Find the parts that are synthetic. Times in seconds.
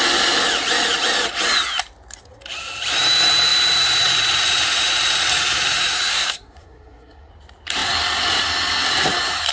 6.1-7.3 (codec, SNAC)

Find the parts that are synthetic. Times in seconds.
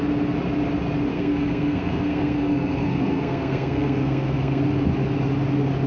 1.1-4.6 (codec, SNAC)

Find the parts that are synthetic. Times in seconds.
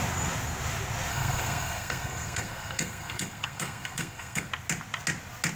1.1-4.5 (codec, SNAC)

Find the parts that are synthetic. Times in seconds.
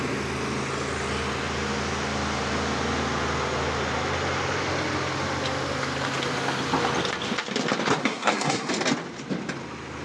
8.0-8.7 (codec, SNAC)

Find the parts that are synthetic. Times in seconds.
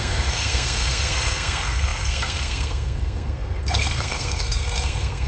0.0-5.3 (codec, SNAC)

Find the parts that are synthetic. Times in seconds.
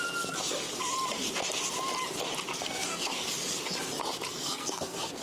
2.6-3.2 (codec, SNAC); 4.3-5.2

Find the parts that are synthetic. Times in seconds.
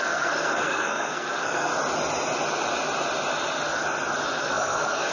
0.0-1.7 (codec, SNAC); 4.4-5.1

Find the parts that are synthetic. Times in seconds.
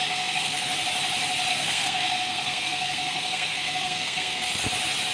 0.0-0.7 (codec, SNAC); 1.5-4.6